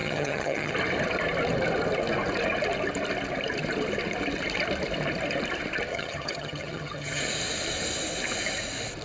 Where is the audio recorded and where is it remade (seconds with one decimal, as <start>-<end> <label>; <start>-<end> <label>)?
0.0-0.7 remade; 0.7-5.9 recorded; 5.9-7.3 remade; 7.3-9.0 recorded